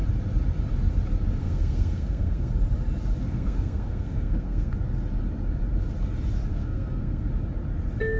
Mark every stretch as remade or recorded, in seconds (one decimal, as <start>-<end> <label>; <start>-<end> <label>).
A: 0.0-1.4 recorded; 1.4-2.5 remade; 2.5-3.2 recorded; 3.2-4.7 remade; 4.7-6.5 recorded; 6.5-7.3 remade; 7.3-8.2 recorded